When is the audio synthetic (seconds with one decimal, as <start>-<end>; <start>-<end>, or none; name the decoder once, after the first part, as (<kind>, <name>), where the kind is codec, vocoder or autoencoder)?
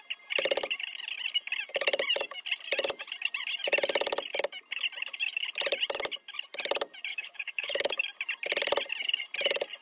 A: 7.1-7.9 (codec, DAC)